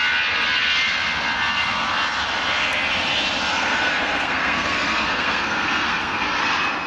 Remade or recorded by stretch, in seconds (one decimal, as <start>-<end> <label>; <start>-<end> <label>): 0.0-3.5 recorded; 3.5-6.4 remade; 6.4-6.9 recorded